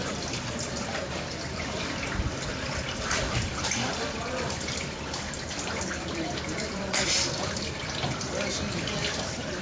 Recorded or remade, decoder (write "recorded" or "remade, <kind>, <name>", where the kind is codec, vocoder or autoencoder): remade, vocoder, BigVGAN v2